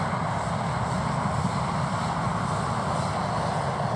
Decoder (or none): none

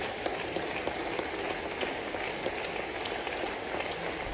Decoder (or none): none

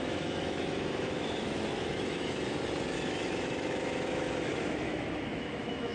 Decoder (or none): autoencoder, DAC-VAE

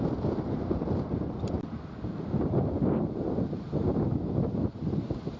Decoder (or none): none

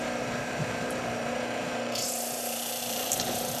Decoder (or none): vocoder, BigVGAN v2